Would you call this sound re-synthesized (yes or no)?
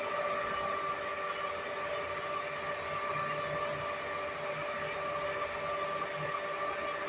no